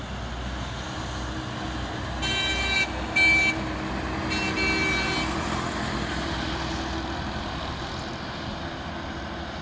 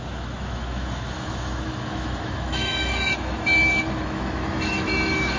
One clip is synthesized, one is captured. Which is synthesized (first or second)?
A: second